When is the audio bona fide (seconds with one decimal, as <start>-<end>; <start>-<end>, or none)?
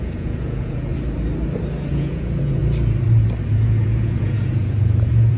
0.9-1.9; 2.6-3.5